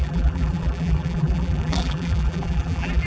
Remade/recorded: remade